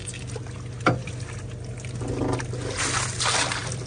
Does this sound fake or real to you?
real